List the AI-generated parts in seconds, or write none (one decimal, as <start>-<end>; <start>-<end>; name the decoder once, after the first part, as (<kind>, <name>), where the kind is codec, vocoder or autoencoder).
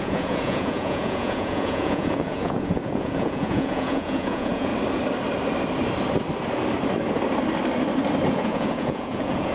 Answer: 0.0-4.7 (vocoder, Vocos); 8.3-9.5